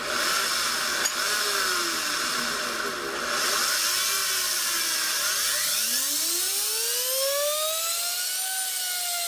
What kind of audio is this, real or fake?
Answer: real